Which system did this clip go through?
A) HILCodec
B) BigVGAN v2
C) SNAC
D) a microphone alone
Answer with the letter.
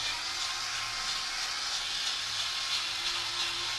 D